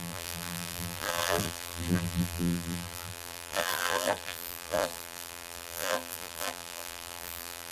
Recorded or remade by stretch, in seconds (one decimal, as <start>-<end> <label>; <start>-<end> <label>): 0.0-7.7 remade